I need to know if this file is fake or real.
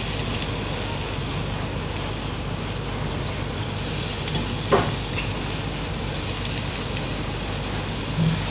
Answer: real